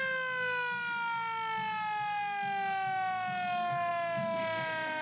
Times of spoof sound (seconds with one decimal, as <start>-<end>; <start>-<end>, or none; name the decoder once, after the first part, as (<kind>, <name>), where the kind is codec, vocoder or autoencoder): none